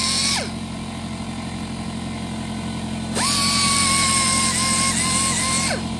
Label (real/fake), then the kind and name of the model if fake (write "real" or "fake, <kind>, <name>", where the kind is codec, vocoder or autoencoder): real